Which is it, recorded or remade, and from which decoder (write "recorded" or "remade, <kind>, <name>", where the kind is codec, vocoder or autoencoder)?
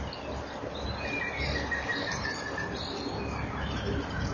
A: recorded